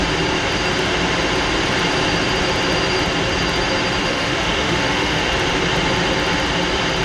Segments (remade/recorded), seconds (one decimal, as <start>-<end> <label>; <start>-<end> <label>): 0.0-4.0 recorded; 4.0-5.2 remade; 5.2-7.0 recorded